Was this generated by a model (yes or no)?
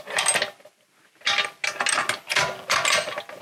no